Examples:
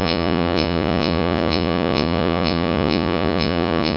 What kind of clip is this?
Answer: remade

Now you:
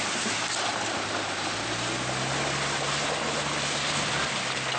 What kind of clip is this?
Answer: recorded